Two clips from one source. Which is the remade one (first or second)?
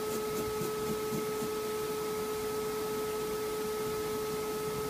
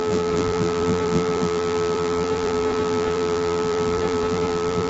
second